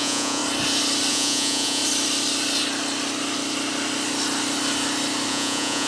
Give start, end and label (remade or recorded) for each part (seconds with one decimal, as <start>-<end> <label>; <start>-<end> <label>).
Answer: 0.0-0.4 remade; 0.4-1.1 recorded; 1.1-1.8 remade; 1.8-5.3 recorded; 5.3-5.9 remade